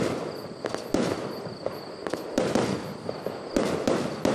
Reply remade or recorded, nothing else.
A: recorded